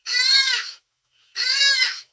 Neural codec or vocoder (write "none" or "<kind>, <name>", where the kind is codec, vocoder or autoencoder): autoencoder, DAC-VAE